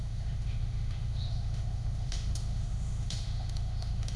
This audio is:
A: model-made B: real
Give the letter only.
A